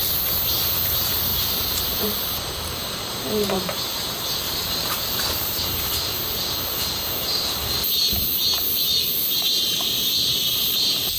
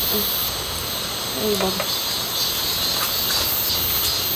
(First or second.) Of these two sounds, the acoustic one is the second